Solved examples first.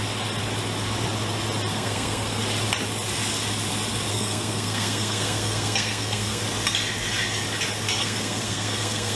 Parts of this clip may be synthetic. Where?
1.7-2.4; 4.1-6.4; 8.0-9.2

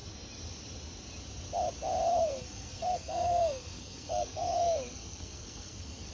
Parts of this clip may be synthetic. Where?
2.1-6.1